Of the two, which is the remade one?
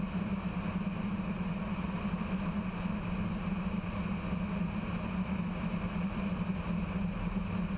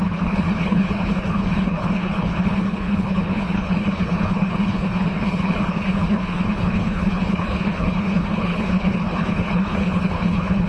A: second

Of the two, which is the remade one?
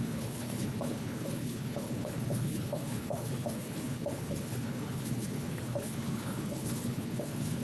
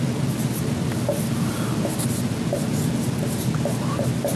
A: first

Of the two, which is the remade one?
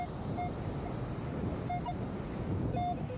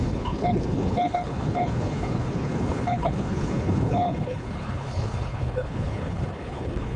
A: second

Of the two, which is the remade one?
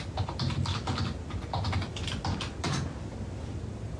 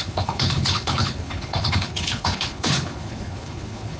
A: second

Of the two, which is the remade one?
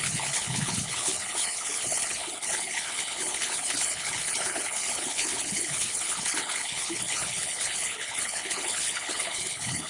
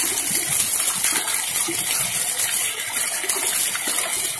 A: first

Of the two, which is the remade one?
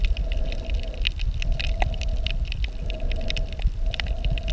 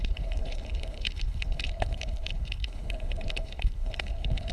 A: second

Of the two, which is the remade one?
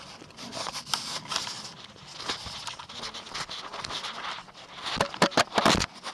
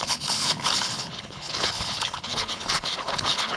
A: second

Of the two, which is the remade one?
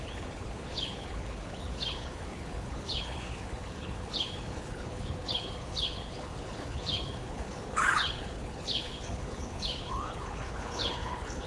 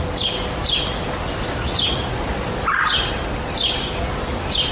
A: first